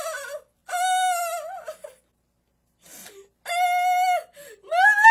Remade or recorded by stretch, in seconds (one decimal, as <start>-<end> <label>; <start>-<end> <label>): 0.0-5.1 recorded